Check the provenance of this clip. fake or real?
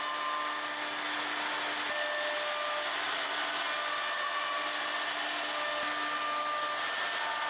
real